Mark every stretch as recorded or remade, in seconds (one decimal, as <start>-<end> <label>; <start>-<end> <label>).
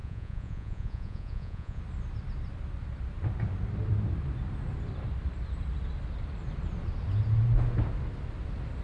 0.0-1.8 remade; 1.8-8.8 recorded